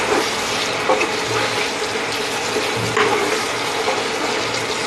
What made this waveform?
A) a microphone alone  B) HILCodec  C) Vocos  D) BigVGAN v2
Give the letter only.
A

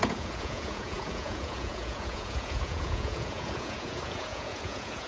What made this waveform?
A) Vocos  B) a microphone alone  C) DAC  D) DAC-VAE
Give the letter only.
A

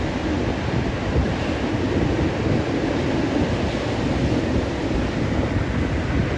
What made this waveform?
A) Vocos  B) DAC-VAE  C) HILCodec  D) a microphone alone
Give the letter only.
D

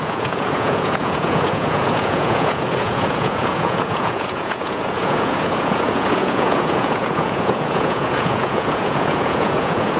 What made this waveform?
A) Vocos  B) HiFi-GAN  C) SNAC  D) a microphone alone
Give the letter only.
A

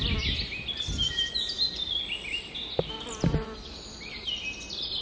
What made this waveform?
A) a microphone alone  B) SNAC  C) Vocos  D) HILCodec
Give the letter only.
A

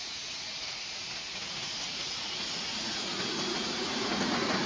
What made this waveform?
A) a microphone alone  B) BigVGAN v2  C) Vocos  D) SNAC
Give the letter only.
C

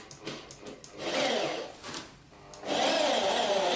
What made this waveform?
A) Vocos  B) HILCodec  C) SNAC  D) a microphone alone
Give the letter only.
D